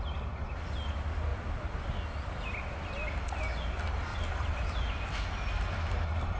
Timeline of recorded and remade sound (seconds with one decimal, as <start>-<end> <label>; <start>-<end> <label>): 0.0-1.3 recorded; 1.3-3.1 remade; 3.1-4.1 recorded; 4.1-5.1 remade; 5.1-6.4 recorded